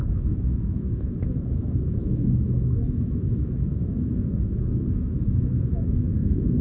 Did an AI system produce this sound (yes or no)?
yes